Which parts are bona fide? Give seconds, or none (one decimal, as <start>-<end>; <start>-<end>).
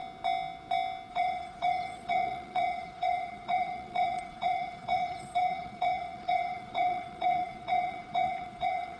0.0-1.1